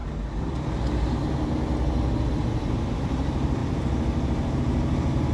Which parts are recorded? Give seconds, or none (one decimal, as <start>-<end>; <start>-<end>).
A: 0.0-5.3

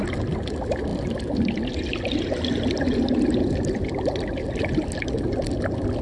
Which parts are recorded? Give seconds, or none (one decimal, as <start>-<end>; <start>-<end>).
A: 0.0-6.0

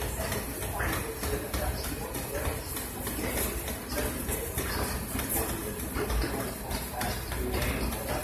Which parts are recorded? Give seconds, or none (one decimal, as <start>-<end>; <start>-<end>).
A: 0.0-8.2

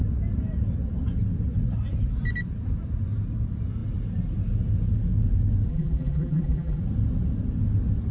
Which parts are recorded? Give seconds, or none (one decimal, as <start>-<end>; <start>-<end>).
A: 0.0-5.7; 6.8-8.1

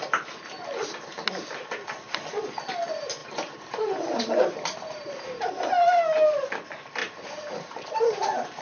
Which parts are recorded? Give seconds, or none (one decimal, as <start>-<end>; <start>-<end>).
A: 0.0-3.2; 5.5-7.0; 8.2-8.6